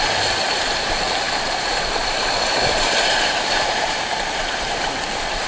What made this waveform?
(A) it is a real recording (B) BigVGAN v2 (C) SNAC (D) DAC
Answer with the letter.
B